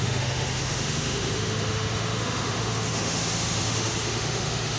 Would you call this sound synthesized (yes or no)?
yes